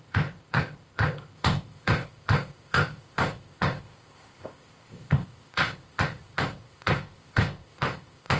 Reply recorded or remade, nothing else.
remade